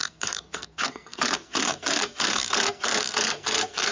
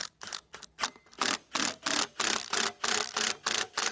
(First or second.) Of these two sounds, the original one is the second